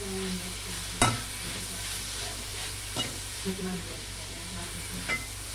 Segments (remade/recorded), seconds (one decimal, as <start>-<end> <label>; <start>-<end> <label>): 0.0-2.5 recorded; 2.5-4.8 remade; 4.8-5.5 recorded